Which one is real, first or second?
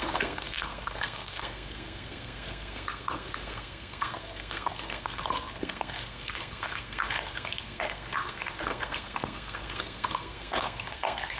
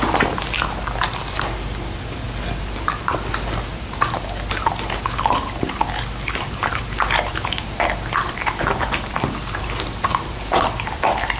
second